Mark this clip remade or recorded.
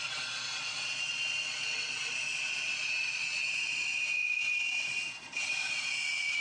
remade